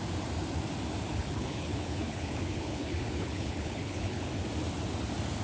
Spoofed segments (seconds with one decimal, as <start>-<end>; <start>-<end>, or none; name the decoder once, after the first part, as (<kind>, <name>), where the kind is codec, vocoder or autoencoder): 1.1-4.3 (codec, HILCodec)